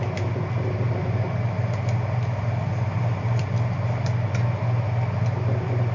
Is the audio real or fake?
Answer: real